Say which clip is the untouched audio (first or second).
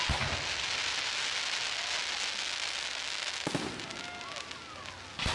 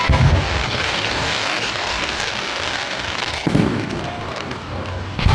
first